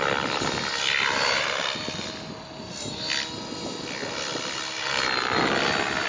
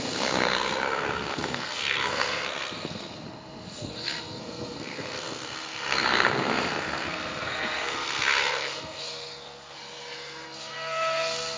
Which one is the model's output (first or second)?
second